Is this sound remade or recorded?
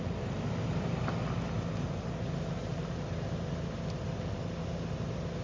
recorded